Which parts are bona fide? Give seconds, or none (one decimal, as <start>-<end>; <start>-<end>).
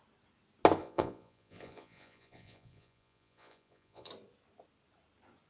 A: 0.0-0.8; 4.1-5.5